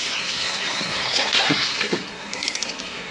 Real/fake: fake